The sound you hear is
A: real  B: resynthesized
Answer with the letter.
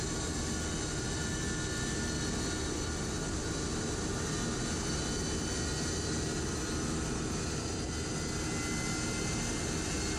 A